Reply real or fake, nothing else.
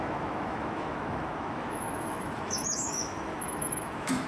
fake